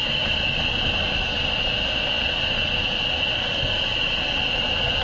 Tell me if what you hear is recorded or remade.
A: recorded